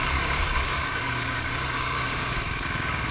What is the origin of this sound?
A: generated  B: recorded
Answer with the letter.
A